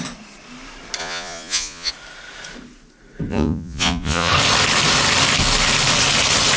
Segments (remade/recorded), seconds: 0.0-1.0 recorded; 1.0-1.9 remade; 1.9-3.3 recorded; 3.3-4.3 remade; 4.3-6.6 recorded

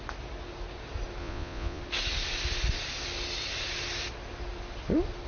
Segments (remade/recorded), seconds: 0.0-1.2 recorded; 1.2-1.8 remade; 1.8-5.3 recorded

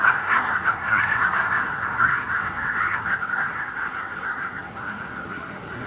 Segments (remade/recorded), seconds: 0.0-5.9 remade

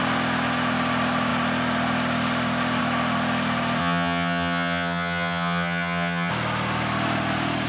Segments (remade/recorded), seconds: 0.0-3.8 recorded; 3.8-6.3 remade; 6.3-7.7 recorded

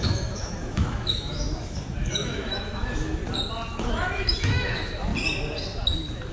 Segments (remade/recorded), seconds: 0.0-3.2 remade; 3.2-3.7 recorded; 3.7-5.1 remade; 5.1-6.3 recorded

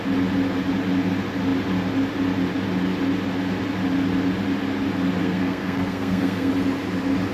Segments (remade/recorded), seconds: 0.0-5.2 recorded; 5.2-6.5 remade; 6.5-7.3 recorded

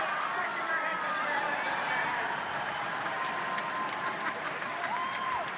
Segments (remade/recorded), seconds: 0.0-0.5 recorded; 0.5-1.0 remade; 1.0-5.6 recorded